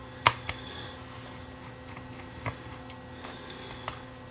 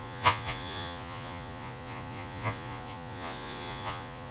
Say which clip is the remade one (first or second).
second